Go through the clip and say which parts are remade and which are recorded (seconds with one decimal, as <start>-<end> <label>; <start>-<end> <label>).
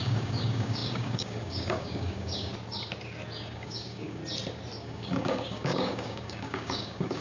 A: 0.0-2.5 remade; 2.5-3.4 recorded; 3.4-4.2 remade; 4.2-4.8 recorded; 4.8-7.2 remade